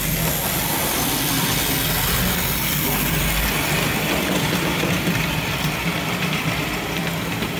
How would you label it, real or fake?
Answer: real